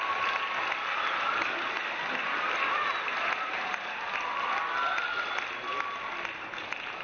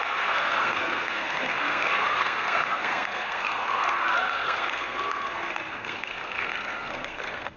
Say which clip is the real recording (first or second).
first